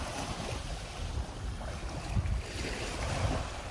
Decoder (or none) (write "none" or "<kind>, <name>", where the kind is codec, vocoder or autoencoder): none